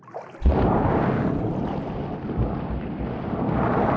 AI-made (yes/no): no